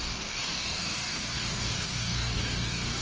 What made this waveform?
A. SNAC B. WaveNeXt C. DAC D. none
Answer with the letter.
C